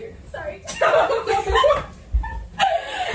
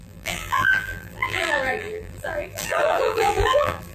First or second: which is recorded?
first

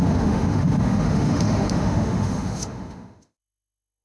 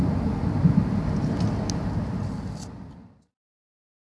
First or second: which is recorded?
second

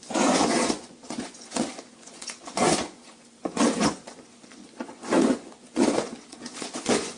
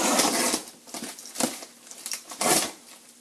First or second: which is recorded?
second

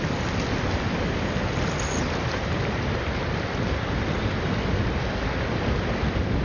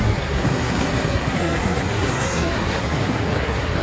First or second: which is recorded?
first